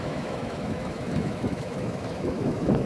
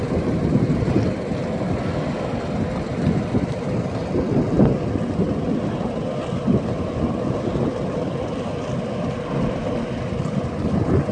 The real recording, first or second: second